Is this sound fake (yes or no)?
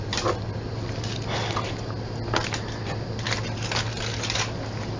no